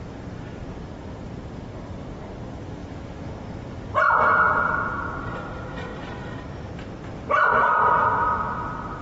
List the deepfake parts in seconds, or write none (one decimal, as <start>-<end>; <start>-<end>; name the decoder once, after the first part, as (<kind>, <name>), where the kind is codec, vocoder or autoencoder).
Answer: 0.6-2.2 (vocoder, BigVGAN v2); 2.8-3.9; 5.9-6.5